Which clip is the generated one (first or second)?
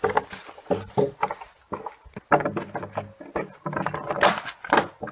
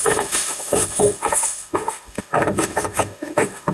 second